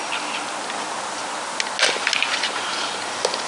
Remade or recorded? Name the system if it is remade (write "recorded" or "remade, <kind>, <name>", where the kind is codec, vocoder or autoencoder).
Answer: recorded